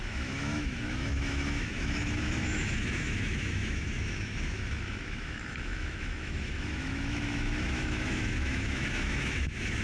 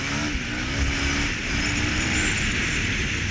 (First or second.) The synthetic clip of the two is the first